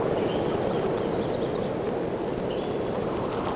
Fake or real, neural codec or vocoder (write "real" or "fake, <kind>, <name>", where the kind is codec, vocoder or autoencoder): real